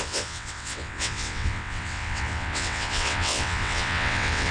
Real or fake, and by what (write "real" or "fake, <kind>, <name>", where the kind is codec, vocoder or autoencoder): fake, vocoder, WaveNeXt